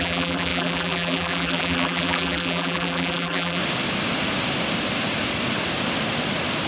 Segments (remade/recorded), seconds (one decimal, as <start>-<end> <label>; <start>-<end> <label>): 0.0-3.6 remade; 3.6-6.7 recorded